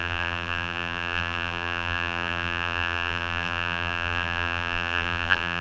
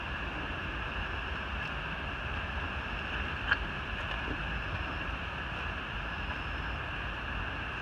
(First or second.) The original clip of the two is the second